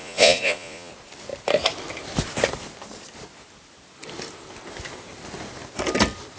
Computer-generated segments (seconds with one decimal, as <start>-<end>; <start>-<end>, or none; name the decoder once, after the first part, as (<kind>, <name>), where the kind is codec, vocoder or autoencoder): 0.0-0.9 (vocoder, Vocos)